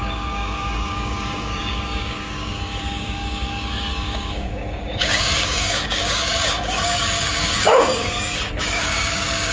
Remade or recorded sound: remade